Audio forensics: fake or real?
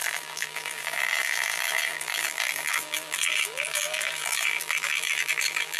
fake